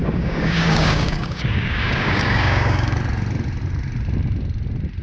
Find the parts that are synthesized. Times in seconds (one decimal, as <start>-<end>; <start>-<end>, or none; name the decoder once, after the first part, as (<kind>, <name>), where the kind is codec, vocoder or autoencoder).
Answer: 0.0-3.0 (codec, DAC)